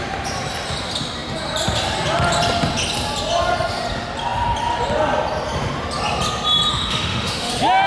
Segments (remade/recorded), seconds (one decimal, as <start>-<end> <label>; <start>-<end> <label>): 0.0-6.7 recorded; 6.7-7.5 remade; 7.5-7.9 recorded